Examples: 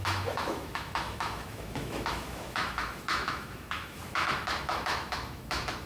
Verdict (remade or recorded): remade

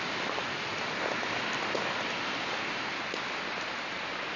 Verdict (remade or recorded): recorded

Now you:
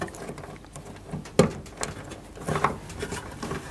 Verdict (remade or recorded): recorded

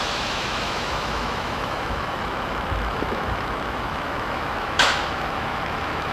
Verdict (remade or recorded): remade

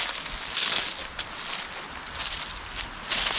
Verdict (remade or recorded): recorded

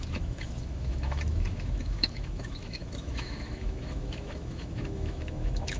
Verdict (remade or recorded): remade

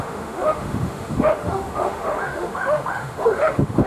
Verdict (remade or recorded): remade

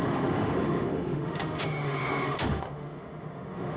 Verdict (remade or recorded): remade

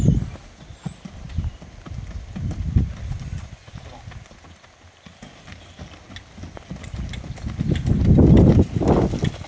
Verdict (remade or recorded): recorded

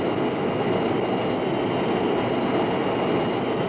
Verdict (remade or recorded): recorded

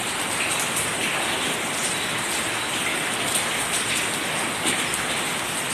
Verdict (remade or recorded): recorded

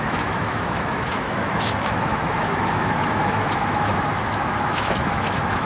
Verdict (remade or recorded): remade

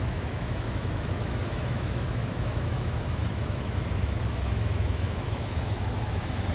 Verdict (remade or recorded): remade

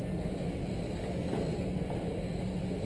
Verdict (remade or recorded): recorded